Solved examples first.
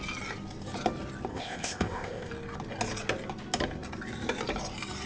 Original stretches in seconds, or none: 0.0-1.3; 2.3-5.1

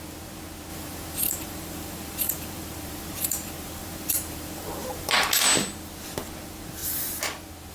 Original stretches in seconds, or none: 0.0-0.7; 5.1-7.7